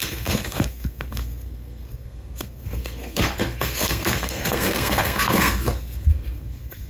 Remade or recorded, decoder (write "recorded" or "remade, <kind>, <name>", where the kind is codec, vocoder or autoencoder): remade, codec, SNAC